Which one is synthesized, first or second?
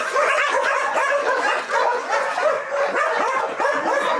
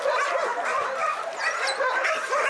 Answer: first